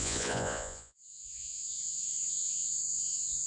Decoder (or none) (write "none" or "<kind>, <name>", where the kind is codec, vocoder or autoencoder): vocoder, Vocos